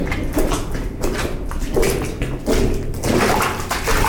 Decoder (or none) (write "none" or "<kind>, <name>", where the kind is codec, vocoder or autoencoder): none